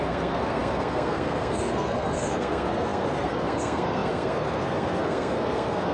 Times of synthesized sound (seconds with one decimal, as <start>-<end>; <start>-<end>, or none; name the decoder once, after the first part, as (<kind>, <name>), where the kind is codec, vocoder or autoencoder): 0.0-5.9 (codec, SNAC)